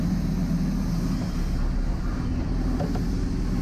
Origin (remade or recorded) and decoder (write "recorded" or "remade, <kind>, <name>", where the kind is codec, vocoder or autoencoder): recorded